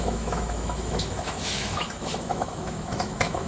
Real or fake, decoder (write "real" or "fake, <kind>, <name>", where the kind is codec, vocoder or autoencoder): fake, autoencoder, DAC-VAE